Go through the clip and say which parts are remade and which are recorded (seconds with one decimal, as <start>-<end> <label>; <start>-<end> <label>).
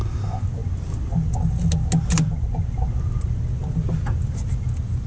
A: 0.0-5.1 recorded